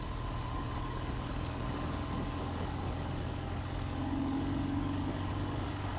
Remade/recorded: remade